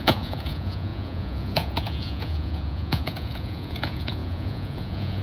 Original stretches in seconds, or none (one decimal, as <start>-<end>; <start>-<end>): none